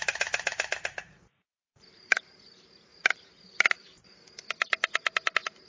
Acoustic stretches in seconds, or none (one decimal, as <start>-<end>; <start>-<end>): 2.3-2.9; 4.2-5.7